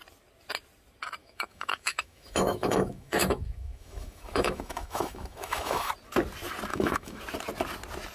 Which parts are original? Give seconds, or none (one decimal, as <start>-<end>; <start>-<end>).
0.0-1.2; 5.9-6.7; 7.2-8.1